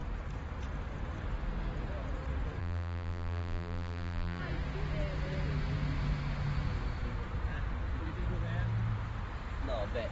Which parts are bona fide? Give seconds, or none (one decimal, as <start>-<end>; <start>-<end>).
0.0-2.6; 4.4-10.1